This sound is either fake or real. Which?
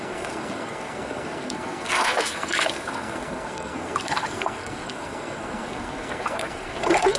fake